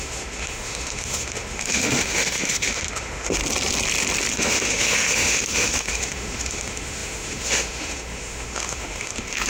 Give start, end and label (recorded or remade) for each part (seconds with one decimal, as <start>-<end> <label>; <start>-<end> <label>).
0.0-3.4 remade; 3.4-4.3 recorded; 4.3-9.5 remade